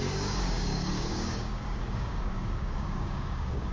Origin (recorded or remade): remade